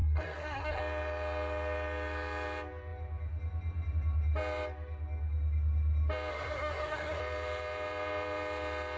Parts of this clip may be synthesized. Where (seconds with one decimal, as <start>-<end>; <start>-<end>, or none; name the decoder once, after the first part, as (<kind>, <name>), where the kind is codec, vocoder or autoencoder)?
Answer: 0.0-0.8 (codec, SNAC); 6.3-7.2